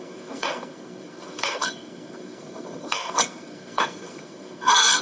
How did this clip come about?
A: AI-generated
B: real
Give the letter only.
A